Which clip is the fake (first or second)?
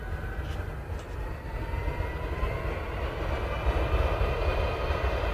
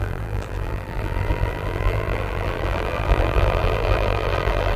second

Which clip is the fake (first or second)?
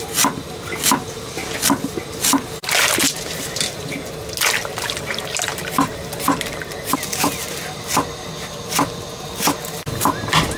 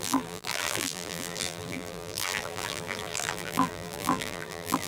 second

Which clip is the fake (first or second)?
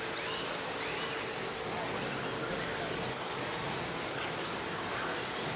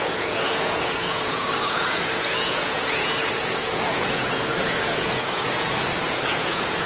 second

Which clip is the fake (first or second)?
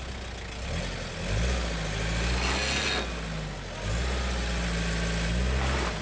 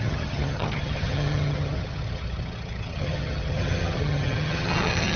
second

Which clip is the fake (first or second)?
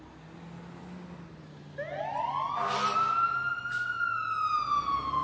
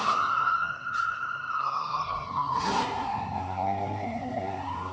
second